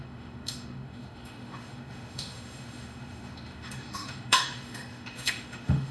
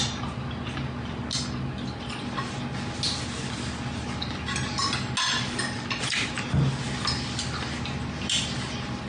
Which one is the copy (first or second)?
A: first